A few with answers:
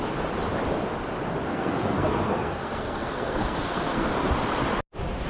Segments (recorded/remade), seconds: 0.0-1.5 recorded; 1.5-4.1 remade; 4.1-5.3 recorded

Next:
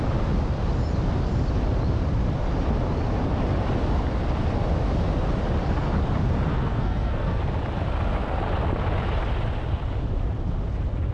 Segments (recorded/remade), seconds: 0.0-6.5 recorded; 6.5-7.4 remade; 7.4-11.1 recorded

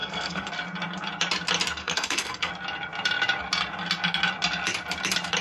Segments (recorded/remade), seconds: 0.0-0.5 remade; 0.5-1.8 recorded; 1.8-2.5 remade; 2.5-5.4 recorded

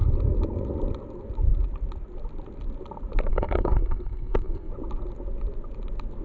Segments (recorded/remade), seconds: 0.0-3.3 recorded; 3.3-4.7 remade; 4.7-6.2 recorded

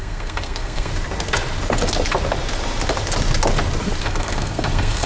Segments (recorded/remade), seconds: 0.0-0.9 remade; 0.9-4.0 recorded; 4.0-5.1 remade

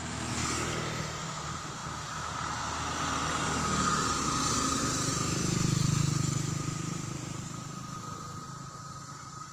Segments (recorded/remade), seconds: 0.0-0.4 remade; 0.4-1.0 recorded; 1.0-1.8 remade; 1.8-2.5 recorded; 2.5-3.2 remade; 3.2-4.1 recorded; 4.1-9.5 remade

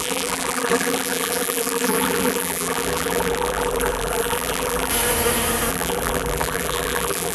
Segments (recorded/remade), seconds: 0.0-4.9 remade; 4.9-5.7 recorded; 5.7-7.3 remade

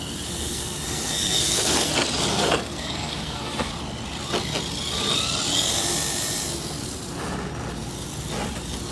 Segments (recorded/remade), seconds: 0.0-0.4 recorded; 0.4-1.9 remade; 1.9-2.3 recorded; 2.3-3.7 remade; 3.7-8.9 recorded